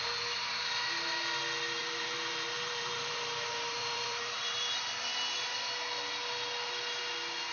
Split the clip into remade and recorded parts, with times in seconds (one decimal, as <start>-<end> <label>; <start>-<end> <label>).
0.0-1.8 recorded; 1.8-4.8 remade; 4.8-7.5 recorded